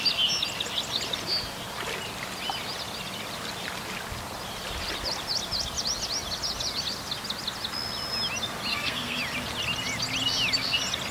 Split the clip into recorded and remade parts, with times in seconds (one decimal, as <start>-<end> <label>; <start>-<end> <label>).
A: 0.0-8.7 recorded; 8.7-9.2 remade; 9.2-11.1 recorded